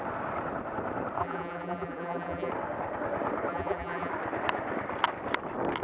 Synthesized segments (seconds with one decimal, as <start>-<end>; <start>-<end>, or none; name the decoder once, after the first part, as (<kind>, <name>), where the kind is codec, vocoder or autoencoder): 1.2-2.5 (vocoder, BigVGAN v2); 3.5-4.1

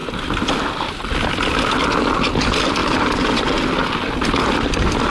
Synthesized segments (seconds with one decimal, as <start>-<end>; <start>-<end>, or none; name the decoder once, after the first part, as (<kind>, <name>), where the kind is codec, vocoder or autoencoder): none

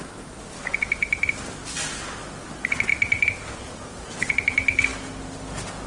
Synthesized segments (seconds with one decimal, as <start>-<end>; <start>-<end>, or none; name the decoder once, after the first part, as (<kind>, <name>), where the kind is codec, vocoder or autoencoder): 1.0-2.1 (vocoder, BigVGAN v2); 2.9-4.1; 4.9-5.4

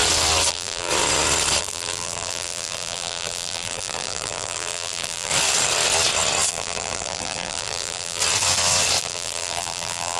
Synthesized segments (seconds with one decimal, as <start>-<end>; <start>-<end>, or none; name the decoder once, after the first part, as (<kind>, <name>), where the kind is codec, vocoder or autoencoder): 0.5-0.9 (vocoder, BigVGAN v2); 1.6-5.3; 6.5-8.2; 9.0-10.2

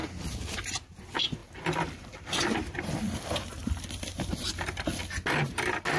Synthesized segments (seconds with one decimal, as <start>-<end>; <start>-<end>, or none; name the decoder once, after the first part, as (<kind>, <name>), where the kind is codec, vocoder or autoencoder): 1.4-4.5 (vocoder, BigVGAN v2)

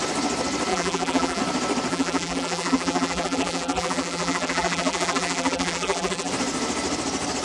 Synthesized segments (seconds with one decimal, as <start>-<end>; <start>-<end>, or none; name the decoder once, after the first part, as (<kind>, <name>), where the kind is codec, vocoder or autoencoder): 0.7-1.4 (vocoder, BigVGAN v2); 1.9-6.3

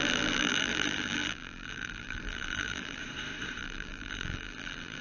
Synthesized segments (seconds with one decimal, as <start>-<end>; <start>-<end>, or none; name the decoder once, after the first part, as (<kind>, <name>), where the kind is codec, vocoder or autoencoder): 0.0-3.0 (vocoder, BigVGAN v2); 3.6-5.0

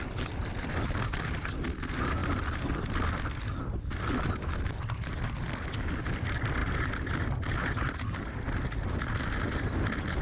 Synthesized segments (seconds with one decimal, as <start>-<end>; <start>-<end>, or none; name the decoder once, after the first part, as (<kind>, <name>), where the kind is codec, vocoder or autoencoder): 2.2-5.7 (vocoder, BigVGAN v2)